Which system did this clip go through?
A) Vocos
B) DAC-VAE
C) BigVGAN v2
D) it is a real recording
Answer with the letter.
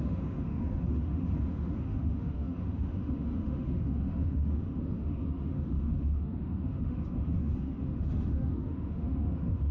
B